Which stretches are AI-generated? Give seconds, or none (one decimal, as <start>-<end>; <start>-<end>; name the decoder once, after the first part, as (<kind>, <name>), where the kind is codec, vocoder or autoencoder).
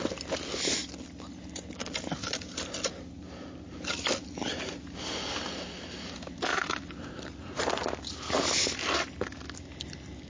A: 6.5-7.4 (vocoder, BigVGAN v2)